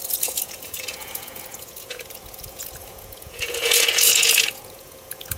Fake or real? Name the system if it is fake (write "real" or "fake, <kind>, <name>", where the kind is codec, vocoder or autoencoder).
fake, vocoder, Vocos